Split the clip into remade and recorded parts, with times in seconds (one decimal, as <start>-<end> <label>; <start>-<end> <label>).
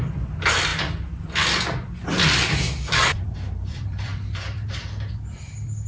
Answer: 0.0-5.9 remade